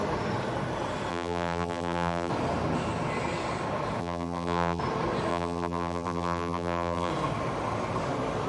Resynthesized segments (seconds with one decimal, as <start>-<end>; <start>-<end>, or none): 1.1-2.3; 4.0-4.8; 5.3-7.1